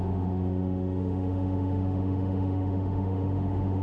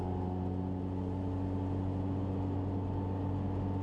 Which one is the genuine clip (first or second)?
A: second